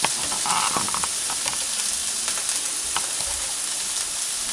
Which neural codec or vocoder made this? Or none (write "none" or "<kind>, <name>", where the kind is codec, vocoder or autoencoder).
none